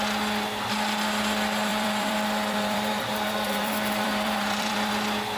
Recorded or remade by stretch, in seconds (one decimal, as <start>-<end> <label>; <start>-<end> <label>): 0.0-1.7 recorded; 1.7-4.9 remade; 4.9-5.4 recorded